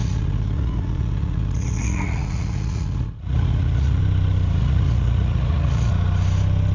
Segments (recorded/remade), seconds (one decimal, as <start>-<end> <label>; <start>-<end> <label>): 0.0-4.0 remade; 4.0-4.6 recorded; 4.6-5.9 remade; 5.9-6.7 recorded